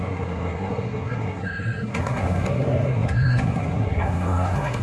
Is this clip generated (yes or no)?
yes